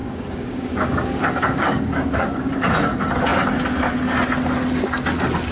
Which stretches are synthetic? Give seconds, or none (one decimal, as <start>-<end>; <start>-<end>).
0.0-2.5